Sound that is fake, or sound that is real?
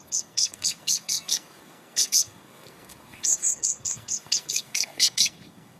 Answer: fake